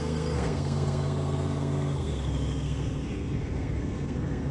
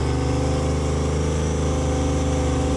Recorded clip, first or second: second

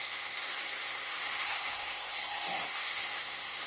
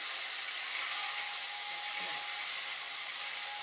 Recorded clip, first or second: second